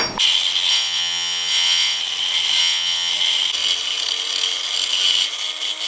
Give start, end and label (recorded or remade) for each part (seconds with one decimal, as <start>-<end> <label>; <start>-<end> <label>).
0.0-0.7 recorded; 0.7-2.0 remade; 2.0-2.6 recorded; 2.6-3.1 remade; 3.1-5.9 recorded